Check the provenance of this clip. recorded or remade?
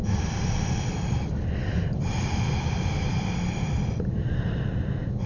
remade